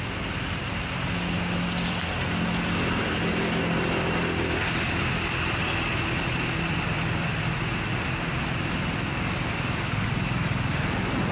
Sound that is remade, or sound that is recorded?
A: recorded